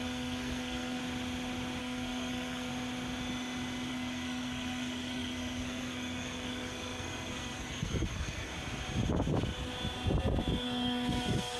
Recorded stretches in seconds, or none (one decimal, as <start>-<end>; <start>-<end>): 1.0-1.8; 2.7-3.9; 8.5-10.6